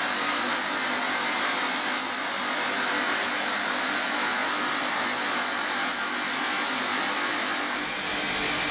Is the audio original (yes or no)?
yes